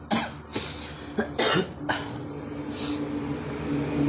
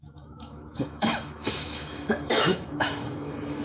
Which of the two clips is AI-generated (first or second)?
second